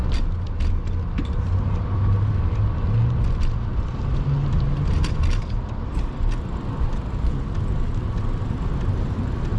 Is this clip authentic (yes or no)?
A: yes